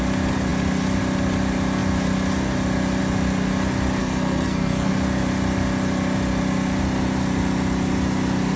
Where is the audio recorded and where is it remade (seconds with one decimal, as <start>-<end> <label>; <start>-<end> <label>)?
0.0-4.0 recorded; 4.0-4.9 remade; 4.9-8.6 recorded